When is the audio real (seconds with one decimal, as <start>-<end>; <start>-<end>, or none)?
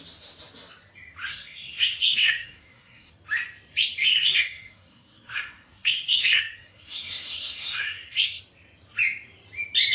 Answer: 0.0-1.3; 3.1-4.0; 8.4-9.9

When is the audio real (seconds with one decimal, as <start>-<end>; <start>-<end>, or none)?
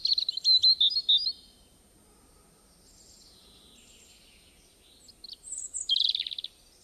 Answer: 0.0-6.8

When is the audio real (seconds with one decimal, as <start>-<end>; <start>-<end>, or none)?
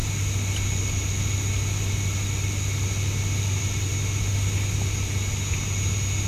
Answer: 0.0-6.3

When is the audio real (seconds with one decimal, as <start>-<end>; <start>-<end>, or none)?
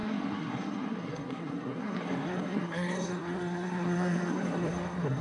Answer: none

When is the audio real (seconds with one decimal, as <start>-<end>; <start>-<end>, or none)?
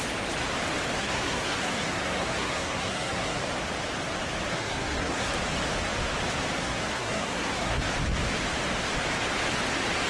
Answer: 0.0-1.0; 3.4-4.5; 5.3-6.6; 7.8-10.1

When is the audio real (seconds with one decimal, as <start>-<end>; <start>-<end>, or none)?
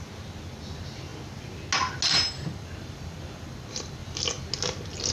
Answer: 0.0-5.1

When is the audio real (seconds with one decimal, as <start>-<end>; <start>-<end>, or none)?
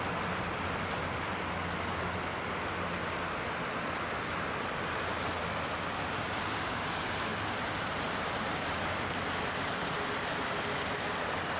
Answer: 0.0-11.6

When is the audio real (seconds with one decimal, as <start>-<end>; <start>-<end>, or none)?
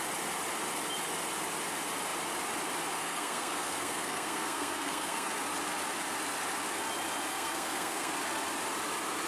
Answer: 0.0-3.0; 5.3-7.3; 8.1-9.3